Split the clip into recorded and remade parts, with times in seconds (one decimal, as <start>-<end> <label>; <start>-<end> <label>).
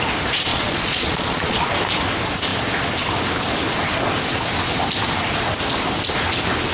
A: 0.0-0.5 recorded; 0.5-1.7 remade; 1.7-6.7 recorded